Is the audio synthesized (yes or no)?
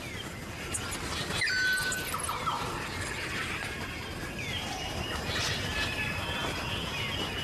no